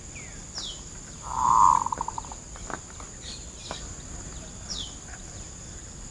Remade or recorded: recorded